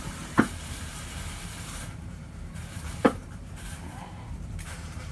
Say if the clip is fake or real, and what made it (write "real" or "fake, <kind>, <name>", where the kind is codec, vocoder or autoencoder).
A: fake, vocoder, BigVGAN v2